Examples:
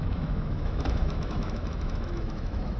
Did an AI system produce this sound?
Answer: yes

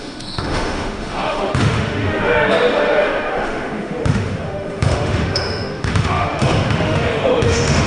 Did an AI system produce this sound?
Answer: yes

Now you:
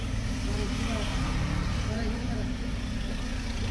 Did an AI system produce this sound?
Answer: no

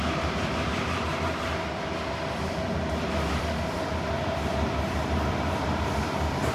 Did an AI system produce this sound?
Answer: yes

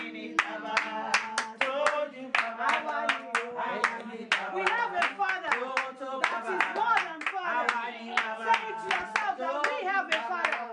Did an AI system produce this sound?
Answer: no